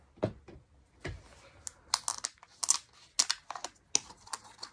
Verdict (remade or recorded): recorded